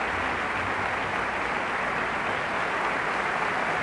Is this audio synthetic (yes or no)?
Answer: no